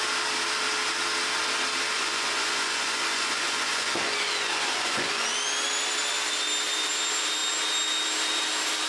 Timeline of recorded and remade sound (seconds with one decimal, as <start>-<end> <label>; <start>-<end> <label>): 0.0-1.9 recorded; 1.9-5.3 remade; 5.3-8.9 recorded